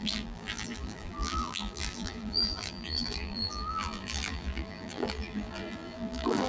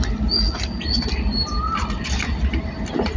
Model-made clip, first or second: first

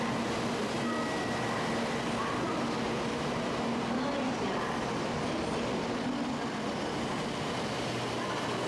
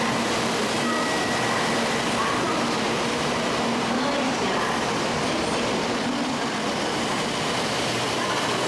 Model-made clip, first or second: second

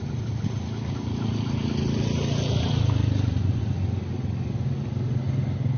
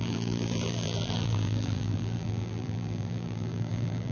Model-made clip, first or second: second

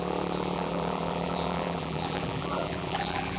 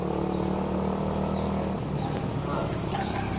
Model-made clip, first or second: first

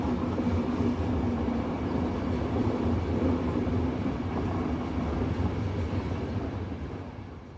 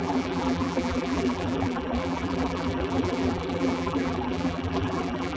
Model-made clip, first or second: second